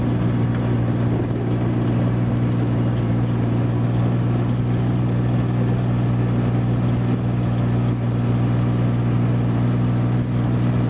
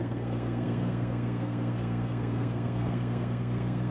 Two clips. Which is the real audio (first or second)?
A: first